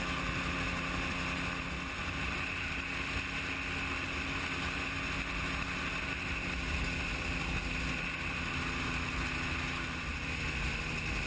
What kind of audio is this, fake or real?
real